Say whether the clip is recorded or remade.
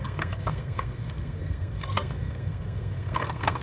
remade